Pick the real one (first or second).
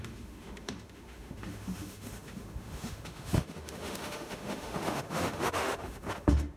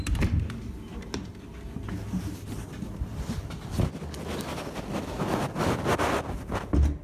second